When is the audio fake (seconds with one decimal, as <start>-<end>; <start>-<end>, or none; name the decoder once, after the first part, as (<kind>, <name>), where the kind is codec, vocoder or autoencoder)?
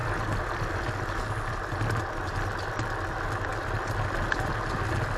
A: none